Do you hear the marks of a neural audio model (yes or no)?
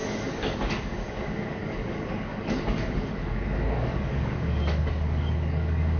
yes